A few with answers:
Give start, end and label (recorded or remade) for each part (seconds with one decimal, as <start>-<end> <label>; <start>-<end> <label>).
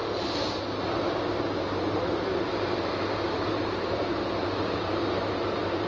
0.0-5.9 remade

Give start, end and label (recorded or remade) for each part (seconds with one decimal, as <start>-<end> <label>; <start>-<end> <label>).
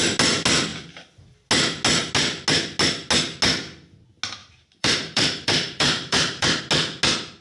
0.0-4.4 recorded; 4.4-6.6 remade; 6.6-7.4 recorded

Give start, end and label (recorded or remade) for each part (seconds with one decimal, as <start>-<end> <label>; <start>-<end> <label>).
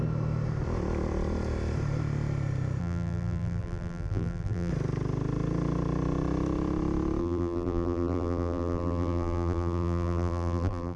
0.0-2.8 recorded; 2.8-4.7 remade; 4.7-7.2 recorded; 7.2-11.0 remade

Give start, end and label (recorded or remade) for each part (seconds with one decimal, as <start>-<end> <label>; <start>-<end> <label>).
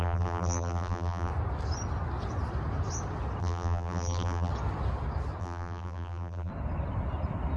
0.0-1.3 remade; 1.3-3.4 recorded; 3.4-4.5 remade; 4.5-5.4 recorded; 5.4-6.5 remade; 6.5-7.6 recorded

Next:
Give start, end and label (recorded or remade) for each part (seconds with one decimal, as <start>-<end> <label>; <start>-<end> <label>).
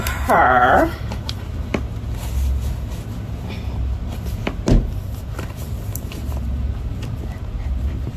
0.0-1.7 remade; 1.7-3.8 recorded; 3.8-4.4 remade; 4.4-5.0 recorded; 5.0-8.2 remade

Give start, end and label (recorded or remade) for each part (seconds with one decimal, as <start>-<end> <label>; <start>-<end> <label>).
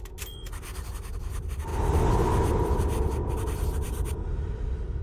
0.0-5.0 recorded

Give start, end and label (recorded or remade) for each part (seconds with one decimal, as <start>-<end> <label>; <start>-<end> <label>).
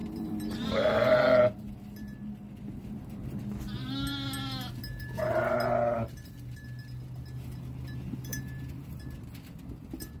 0.0-3.4 remade; 3.4-8.3 recorded; 8.3-10.2 remade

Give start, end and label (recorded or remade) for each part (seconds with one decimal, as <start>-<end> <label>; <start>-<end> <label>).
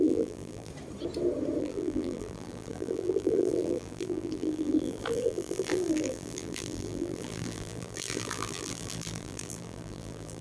0.0-0.7 remade; 0.7-1.6 recorded; 1.6-10.4 remade